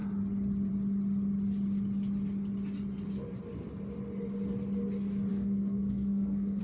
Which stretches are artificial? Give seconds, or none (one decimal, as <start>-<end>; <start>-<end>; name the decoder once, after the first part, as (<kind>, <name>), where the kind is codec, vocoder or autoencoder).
5.3-6.6 (codec, SNAC)